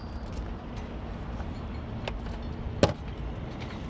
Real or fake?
real